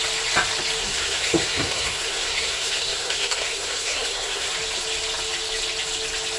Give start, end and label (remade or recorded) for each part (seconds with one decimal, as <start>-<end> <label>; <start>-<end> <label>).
0.0-0.8 recorded; 0.8-4.5 remade; 4.5-6.4 recorded